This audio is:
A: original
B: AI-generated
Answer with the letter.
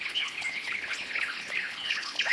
B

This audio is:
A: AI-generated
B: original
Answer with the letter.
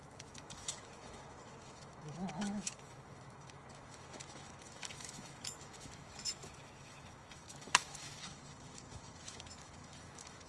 A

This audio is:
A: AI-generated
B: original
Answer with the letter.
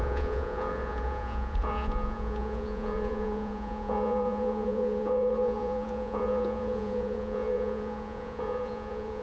A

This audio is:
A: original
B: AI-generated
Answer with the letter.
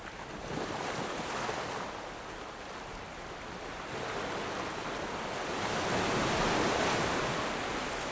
A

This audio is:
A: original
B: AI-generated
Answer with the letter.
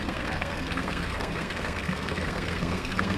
B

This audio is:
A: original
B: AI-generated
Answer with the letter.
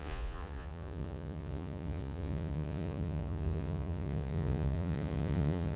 B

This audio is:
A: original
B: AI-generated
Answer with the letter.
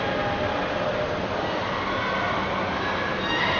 A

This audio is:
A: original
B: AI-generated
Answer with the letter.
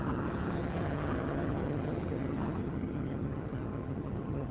B